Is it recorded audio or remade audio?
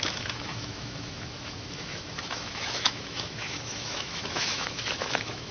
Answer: remade